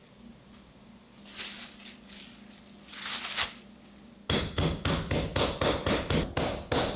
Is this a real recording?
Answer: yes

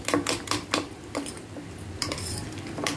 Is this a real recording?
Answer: no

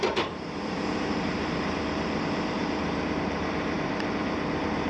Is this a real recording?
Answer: no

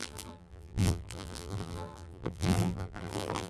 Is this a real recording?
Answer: no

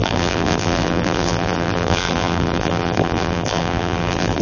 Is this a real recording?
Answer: no